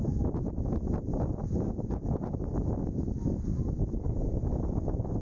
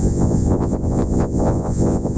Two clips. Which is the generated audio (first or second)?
second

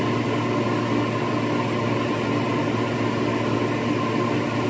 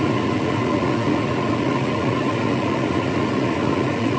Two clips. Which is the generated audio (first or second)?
second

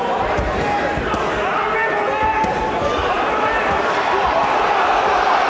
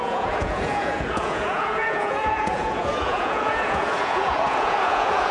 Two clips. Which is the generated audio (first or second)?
second